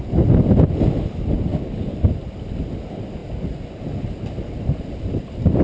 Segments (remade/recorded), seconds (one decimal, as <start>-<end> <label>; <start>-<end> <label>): 0.0-5.6 recorded